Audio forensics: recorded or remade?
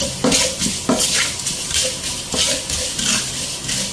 recorded